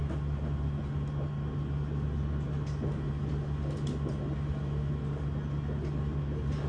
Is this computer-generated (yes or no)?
no